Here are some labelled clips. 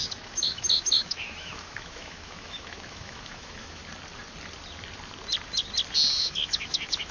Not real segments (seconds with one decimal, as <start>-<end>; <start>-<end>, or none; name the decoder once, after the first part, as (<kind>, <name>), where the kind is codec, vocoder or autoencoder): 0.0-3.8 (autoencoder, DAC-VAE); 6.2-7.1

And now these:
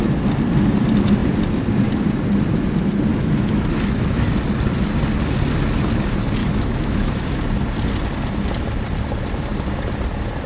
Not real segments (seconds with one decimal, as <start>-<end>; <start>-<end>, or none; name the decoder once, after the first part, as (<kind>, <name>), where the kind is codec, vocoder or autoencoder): 3.1-4.3 (autoencoder, DAC-VAE); 6.4-7.3

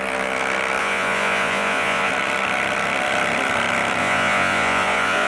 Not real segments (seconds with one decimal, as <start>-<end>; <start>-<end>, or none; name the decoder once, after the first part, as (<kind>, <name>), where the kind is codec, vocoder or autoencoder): 0.8-2.1 (vocoder, Vocos); 4.0-5.3